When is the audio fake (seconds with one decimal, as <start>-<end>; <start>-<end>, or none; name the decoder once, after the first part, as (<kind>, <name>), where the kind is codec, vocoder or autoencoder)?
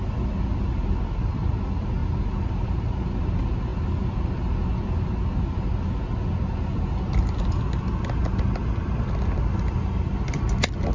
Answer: none